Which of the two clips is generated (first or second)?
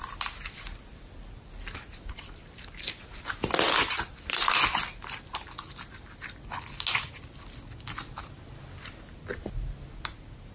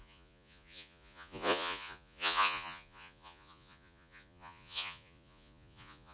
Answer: second